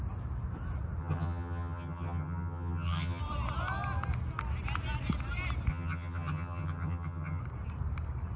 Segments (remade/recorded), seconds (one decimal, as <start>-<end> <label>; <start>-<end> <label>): 0.0-1.0 recorded; 1.0-3.2 remade; 3.2-5.7 recorded; 5.7-7.4 remade; 7.4-8.4 recorded